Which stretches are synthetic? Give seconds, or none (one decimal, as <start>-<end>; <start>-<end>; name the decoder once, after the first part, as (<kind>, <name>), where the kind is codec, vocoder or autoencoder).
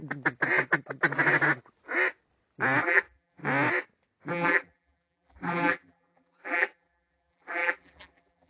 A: 2.8-3.4 (vocoder, BigVGAN v2); 4.3-8.5